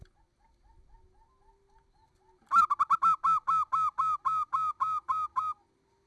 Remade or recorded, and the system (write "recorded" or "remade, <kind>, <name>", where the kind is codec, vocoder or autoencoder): recorded